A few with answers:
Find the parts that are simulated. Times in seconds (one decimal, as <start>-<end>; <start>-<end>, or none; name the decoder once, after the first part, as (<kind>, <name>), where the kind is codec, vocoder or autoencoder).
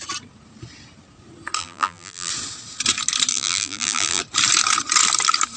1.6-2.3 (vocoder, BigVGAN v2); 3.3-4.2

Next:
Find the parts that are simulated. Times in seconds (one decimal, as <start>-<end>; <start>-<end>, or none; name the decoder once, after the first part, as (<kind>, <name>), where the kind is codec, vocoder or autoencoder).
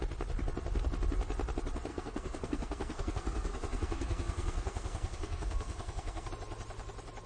1.9-6.3 (codec, SNAC)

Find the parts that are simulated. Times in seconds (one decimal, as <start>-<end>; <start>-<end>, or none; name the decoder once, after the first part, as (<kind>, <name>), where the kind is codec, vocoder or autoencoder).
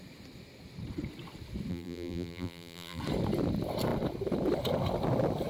1.7-3.0 (vocoder, BigVGAN v2)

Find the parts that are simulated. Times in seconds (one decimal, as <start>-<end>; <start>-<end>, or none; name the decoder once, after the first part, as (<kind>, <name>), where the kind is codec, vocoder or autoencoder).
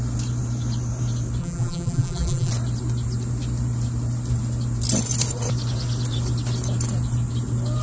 1.4-2.5 (vocoder, BigVGAN v2)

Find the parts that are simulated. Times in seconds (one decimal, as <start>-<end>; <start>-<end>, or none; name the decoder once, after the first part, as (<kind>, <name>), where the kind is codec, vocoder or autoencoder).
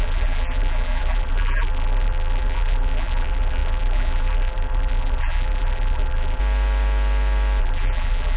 0.0-6.4 (vocoder, BigVGAN v2); 7.6-8.4